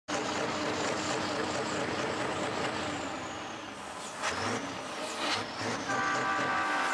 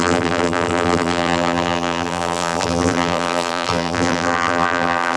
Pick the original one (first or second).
first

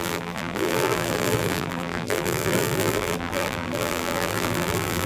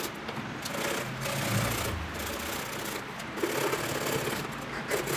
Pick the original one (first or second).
second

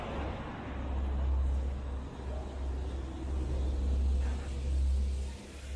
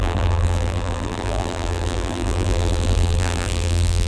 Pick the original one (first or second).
first